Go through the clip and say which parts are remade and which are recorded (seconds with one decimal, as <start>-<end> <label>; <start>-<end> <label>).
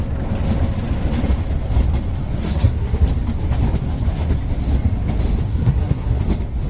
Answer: 0.0-2.4 recorded; 2.4-3.1 remade; 3.1-5.5 recorded; 5.5-6.2 remade; 6.2-6.7 recorded